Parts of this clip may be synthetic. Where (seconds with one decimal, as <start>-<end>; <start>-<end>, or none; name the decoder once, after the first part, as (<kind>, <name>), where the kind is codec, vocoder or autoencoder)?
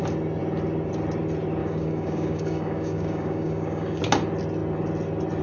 1.6-4.0 (codec, DAC)